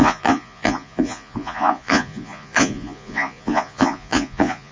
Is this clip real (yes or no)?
no